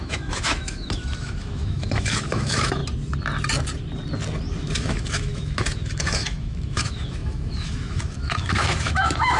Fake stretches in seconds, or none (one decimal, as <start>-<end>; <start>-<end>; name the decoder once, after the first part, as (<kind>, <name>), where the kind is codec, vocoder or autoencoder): 0.0-2.8 (autoencoder, DAC-VAE); 4.6-9.4